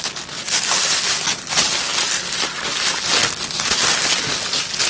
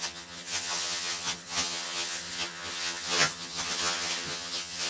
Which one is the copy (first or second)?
second